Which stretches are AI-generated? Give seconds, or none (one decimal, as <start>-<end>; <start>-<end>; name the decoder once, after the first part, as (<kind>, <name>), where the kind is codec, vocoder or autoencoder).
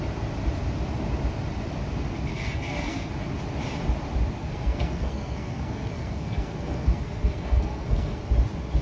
2.3-3.1 (codec, SNAC); 4.4-8.2